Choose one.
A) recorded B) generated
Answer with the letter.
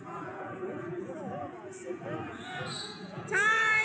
B